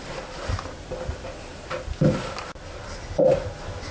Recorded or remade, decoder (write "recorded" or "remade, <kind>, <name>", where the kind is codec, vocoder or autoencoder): recorded